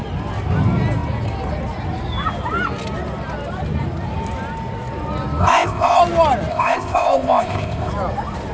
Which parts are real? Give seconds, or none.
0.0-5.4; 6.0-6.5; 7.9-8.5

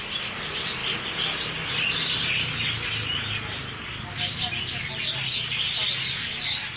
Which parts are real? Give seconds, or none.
0.0-6.8

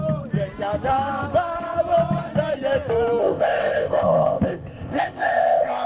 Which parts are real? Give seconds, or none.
0.0-3.2

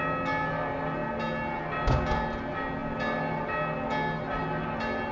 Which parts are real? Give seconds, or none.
0.0-5.1

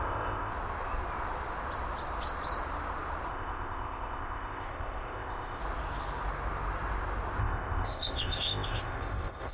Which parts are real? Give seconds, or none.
0.5-3.3; 5.6-7.4

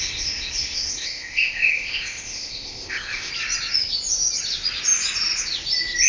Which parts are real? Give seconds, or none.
3.3-6.1